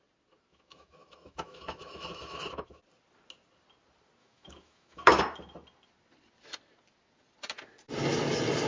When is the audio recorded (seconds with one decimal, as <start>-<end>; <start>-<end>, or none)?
0.0-0.5; 2.8-4.2; 5.2-8.7